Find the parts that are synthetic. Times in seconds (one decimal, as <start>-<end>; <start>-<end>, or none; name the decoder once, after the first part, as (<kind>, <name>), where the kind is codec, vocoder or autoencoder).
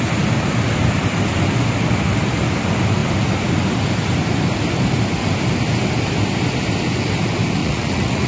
7.6-8.3 (vocoder, Vocos)